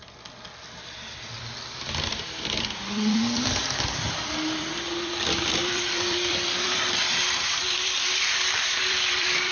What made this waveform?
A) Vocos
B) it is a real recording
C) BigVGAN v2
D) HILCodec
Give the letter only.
C